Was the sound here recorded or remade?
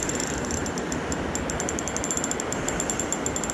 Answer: recorded